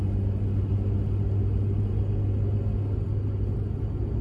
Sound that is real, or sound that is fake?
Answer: real